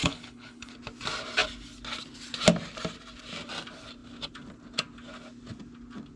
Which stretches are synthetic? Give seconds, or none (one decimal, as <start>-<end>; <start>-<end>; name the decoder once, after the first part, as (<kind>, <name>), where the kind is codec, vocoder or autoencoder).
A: 0.0-0.7 (codec, HILCodec)